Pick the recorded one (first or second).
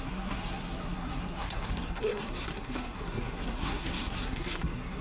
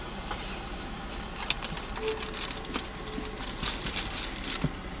second